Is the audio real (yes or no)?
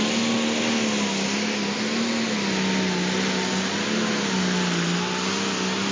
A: yes